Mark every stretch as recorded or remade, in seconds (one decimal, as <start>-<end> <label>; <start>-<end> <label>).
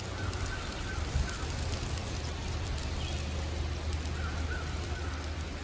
0.0-5.6 recorded